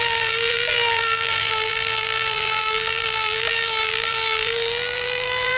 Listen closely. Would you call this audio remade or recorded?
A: remade